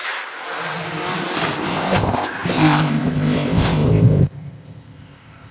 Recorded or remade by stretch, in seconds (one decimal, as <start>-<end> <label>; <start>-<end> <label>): 0.0-1.6 recorded; 1.6-5.5 remade